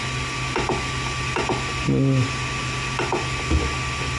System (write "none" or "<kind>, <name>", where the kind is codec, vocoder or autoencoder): none